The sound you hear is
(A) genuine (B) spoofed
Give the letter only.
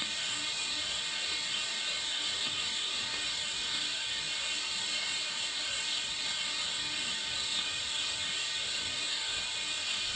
B